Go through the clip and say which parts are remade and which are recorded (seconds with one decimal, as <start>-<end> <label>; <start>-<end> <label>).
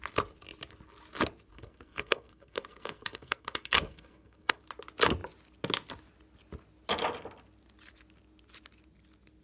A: 0.0-1.5 recorded; 1.5-4.6 remade; 4.6-9.4 recorded